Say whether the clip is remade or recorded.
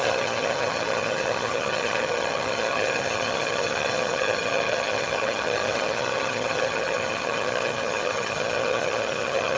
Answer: remade